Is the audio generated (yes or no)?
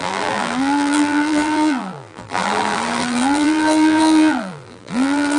yes